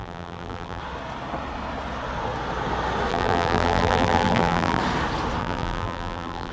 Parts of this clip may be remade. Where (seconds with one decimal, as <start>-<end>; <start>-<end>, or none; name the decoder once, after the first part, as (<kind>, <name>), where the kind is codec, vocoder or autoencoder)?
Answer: 0.0-0.8 (vocoder, BigVGAN v2); 3.1-4.8; 5.4-6.5